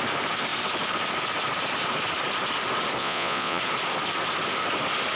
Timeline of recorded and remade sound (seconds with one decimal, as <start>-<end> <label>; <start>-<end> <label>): 0.0-3.0 recorded; 3.0-3.6 remade; 3.6-5.2 recorded